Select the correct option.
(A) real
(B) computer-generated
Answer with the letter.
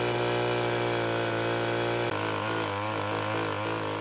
A